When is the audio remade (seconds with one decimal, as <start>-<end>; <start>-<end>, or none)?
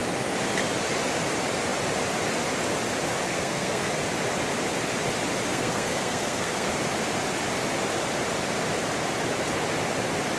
3.3-3.9; 5.5-6.7